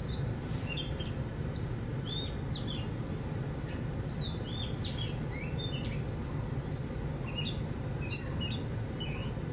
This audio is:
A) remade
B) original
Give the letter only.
B